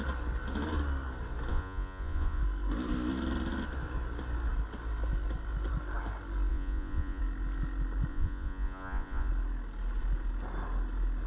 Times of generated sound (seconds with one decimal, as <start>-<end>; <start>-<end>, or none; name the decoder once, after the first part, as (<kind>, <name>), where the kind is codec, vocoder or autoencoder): 1.5-2.4 (vocoder, Vocos); 6.5-7.2; 8.1-9.3